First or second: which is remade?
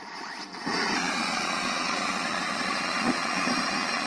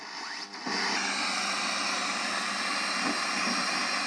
first